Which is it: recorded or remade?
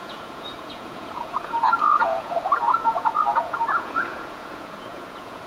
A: remade